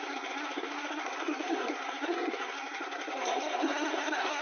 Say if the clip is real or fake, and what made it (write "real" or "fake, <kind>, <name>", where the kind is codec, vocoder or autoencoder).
fake, codec, SNAC